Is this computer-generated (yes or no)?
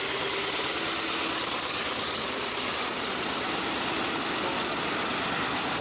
no